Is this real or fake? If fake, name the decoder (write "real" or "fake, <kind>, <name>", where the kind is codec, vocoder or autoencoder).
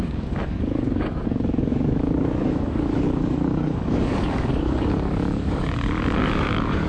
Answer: fake, codec, DAC